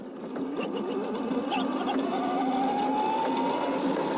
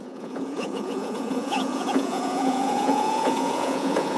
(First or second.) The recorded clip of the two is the first